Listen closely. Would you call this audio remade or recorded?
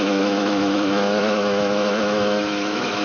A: remade